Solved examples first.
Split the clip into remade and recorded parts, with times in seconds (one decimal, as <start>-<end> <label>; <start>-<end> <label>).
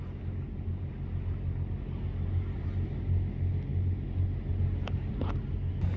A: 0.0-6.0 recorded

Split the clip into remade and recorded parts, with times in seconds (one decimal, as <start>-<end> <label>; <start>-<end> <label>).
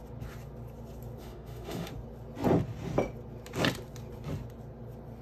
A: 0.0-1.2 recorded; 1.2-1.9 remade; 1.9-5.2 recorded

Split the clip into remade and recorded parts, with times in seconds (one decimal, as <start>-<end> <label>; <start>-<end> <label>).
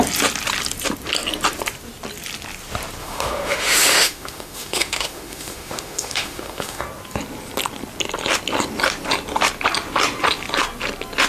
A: 0.0-3.0 recorded; 3.0-6.8 remade; 6.8-11.3 recorded